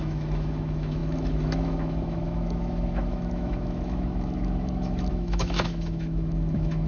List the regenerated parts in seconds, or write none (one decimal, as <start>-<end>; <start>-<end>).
0.0-6.9